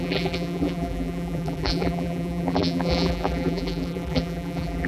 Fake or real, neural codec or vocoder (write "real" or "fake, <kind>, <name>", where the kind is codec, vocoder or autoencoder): fake, vocoder, BigVGAN v2